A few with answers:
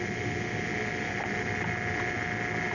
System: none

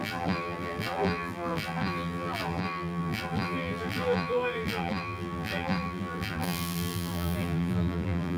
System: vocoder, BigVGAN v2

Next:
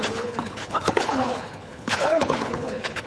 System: codec, HILCodec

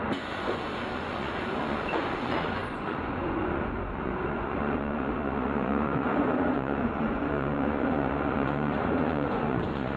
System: vocoder, Vocos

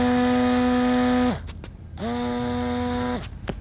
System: none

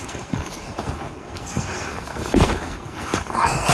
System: codec, SNAC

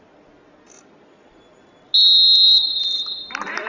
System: none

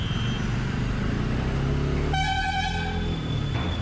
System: none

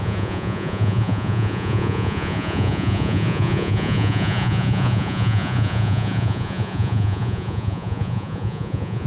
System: vocoder, Vocos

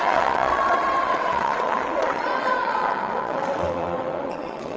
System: vocoder, WaveNeXt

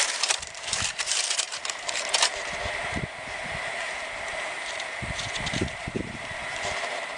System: vocoder, BigVGAN v2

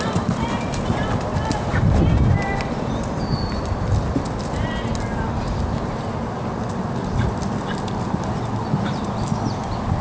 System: none